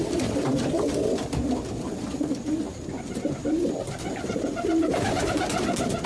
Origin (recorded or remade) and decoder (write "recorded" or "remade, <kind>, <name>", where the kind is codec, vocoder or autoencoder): remade, vocoder, BigVGAN v2